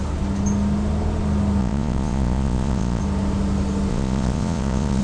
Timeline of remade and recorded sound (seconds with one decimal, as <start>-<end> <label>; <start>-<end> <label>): 0.0-1.6 recorded; 1.6-3.0 remade; 3.0-3.9 recorded; 3.9-5.0 remade